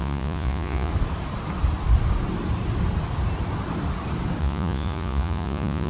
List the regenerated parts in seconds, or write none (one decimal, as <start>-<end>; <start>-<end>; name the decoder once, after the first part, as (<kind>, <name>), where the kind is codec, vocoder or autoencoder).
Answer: 0.0-0.9 (vocoder, Vocos); 4.4-5.9